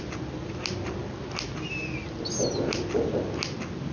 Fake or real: real